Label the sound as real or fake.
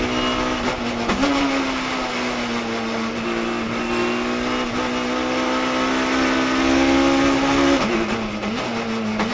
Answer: real